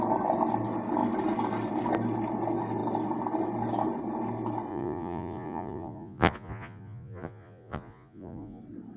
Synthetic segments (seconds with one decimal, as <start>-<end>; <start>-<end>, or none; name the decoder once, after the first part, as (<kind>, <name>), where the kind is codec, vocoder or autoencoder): 4.7-8.6 (vocoder, Vocos)